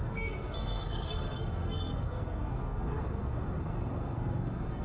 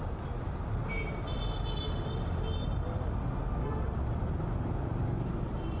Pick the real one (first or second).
second